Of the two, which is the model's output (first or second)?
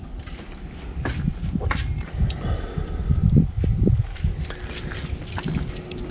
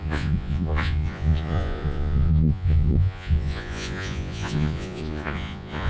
second